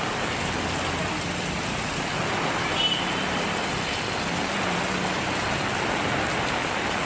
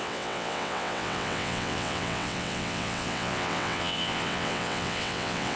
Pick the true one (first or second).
first